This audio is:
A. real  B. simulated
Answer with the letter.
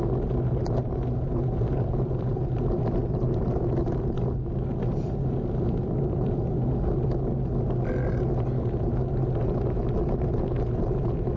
A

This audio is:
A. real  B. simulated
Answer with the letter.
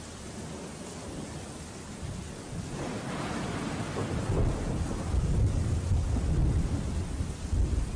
A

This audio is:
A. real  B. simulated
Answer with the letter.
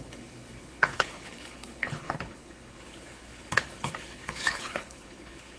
B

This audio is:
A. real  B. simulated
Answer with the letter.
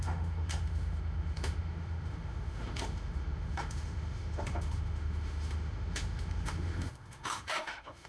B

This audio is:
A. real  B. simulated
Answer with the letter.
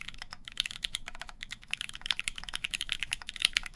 B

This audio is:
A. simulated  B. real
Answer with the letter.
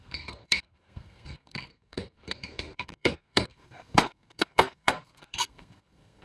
A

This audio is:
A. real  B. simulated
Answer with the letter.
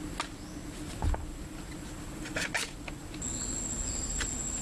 A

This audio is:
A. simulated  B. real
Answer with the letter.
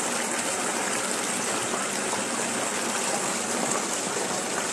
A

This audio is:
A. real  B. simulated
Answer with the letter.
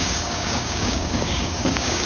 B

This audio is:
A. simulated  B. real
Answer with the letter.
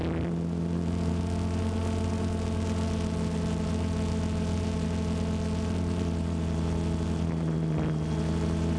B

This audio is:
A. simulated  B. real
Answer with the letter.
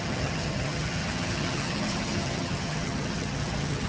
A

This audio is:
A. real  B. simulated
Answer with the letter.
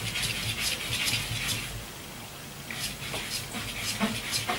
A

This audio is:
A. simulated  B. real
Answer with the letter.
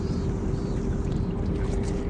A